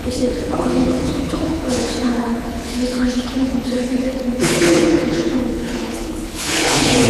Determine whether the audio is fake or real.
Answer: fake